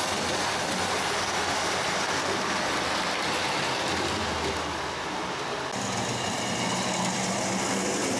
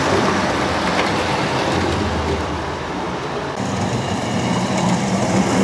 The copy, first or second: second